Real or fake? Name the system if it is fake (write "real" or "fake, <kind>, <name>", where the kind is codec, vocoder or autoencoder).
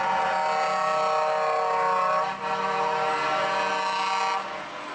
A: real